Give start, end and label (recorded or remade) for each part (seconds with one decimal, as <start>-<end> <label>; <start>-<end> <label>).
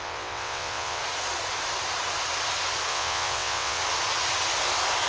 0.0-1.0 remade; 1.0-2.9 recorded; 2.9-3.8 remade; 3.8-5.1 recorded